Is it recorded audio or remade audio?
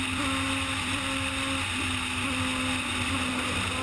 recorded